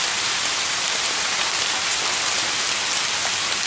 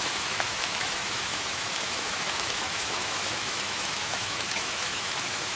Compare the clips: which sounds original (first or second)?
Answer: first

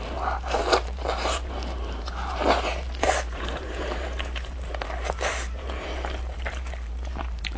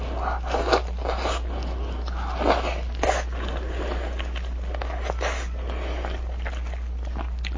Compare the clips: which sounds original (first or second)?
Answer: second